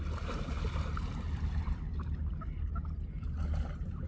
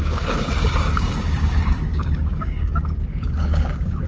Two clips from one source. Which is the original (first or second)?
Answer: first